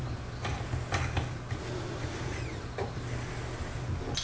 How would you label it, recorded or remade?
recorded